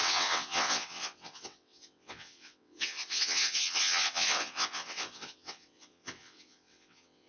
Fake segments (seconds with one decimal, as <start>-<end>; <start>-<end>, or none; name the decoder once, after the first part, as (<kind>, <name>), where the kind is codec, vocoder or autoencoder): 0.0-7.3 (vocoder, WaveNeXt)